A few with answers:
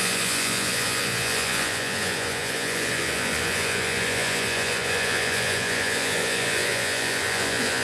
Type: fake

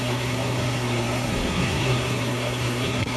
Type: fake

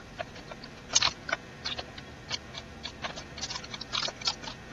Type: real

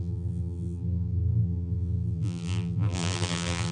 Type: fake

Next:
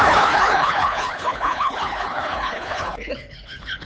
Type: fake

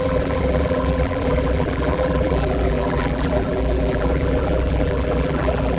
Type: fake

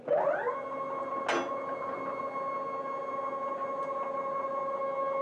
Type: real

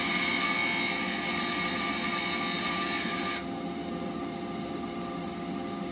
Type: real